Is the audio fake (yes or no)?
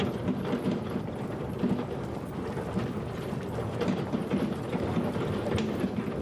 yes